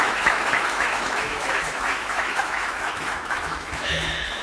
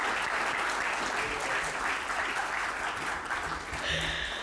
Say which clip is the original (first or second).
second